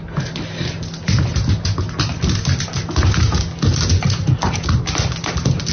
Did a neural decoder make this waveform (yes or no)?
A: no